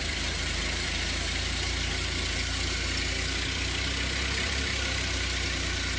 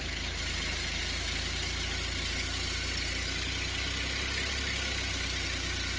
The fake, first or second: first